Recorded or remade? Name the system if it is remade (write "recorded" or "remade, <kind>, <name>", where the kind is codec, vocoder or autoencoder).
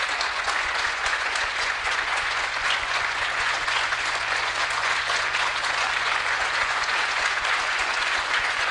remade, vocoder, Vocos